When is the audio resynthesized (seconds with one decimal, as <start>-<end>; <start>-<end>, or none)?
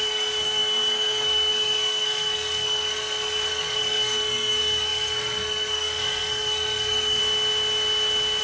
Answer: 0.0-7.2